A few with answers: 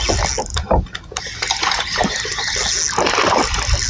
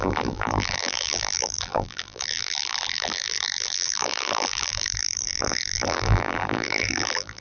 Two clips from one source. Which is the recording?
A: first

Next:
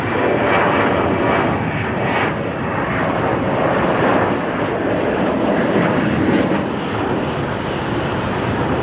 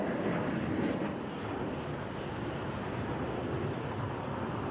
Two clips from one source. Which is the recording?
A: second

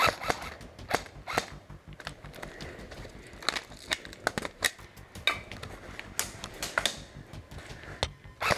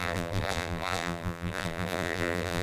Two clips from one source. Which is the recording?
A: first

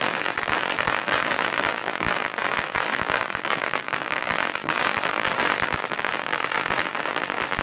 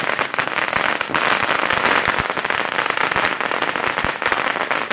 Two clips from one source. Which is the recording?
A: second